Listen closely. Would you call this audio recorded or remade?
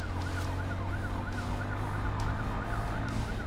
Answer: recorded